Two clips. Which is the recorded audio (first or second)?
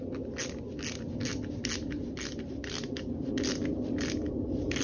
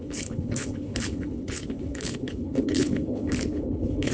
first